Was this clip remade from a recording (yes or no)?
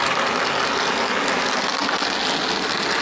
no